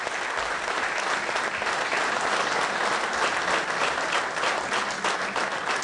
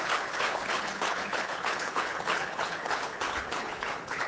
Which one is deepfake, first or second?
second